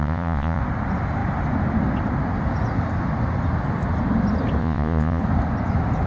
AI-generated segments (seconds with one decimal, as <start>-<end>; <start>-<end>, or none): 0.0-0.6; 4.6-5.2